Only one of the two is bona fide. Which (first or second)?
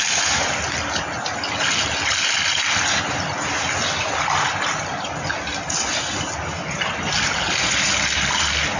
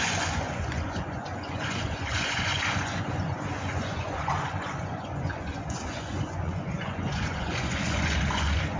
first